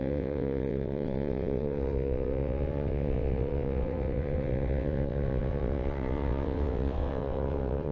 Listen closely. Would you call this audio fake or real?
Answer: fake